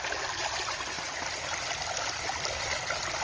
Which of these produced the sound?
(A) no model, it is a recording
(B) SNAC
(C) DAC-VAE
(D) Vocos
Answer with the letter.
A